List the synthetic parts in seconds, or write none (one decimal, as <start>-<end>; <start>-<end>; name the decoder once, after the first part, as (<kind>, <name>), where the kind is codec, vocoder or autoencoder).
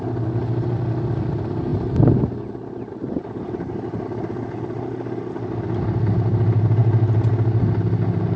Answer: none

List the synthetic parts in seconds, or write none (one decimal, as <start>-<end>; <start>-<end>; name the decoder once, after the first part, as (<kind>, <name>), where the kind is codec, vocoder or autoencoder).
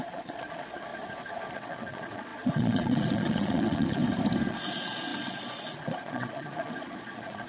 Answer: 0.0-0.9 (vocoder, Vocos); 1.5-4.0; 4.5-7.5